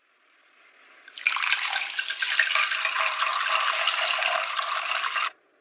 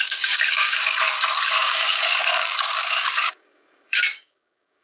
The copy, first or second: second